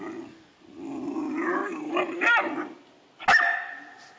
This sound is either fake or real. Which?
real